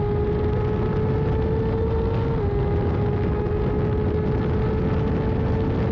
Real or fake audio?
real